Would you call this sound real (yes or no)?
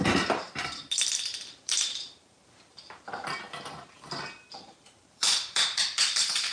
no